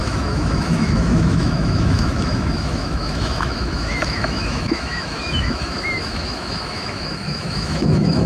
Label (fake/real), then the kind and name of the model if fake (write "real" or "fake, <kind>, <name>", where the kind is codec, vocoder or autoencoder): fake, autoencoder, DAC-VAE